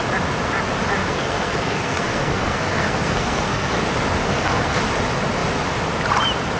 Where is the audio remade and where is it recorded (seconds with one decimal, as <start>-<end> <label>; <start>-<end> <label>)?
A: 0.0-1.0 recorded; 1.0-3.8 remade; 3.8-4.2 recorded; 4.2-4.8 remade; 4.8-6.6 recorded